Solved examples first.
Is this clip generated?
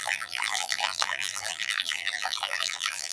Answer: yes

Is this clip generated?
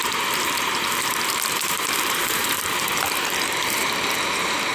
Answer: yes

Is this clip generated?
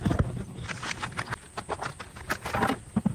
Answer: yes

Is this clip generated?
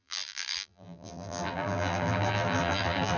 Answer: yes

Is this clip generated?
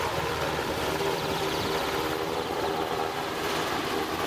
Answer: yes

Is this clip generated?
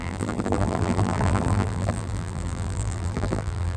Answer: yes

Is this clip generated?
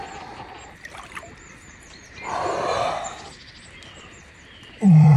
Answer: yes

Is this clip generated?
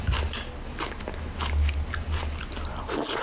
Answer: no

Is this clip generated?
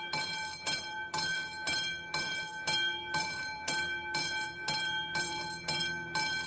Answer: yes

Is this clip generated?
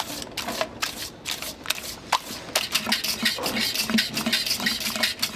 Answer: no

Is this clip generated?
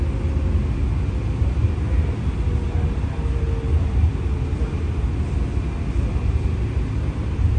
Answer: no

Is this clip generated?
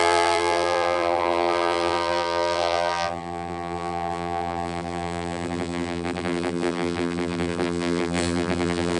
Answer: yes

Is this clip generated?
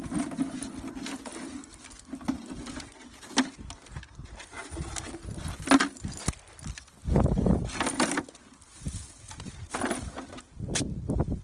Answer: no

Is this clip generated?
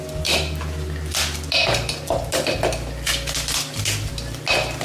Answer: no